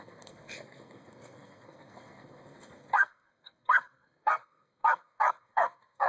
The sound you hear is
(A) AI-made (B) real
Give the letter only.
A